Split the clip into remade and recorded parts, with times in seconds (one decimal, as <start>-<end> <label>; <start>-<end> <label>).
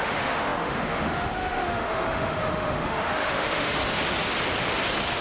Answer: 0.0-3.8 remade; 3.8-5.2 recorded